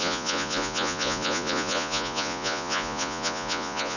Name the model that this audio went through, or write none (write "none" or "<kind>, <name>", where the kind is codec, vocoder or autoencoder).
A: vocoder, Vocos